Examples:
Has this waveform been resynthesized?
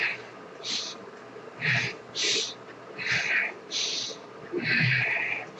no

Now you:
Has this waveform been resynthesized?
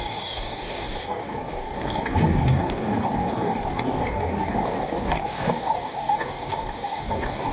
yes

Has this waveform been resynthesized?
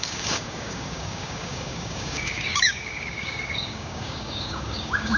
yes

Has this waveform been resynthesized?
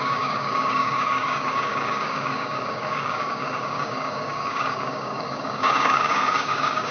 yes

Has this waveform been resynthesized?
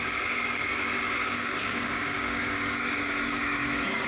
yes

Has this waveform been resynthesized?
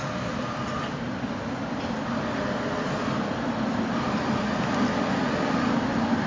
no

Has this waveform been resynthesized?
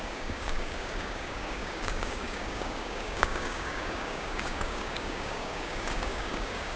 yes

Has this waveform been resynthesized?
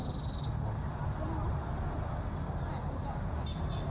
no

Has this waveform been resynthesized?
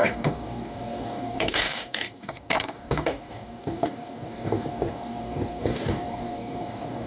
yes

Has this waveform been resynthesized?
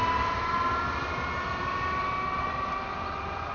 no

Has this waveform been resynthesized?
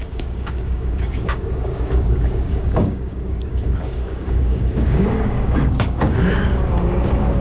yes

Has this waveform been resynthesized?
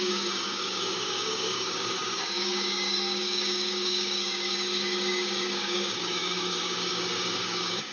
yes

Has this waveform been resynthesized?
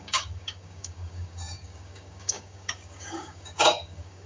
yes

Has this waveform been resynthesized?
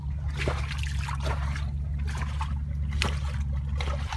no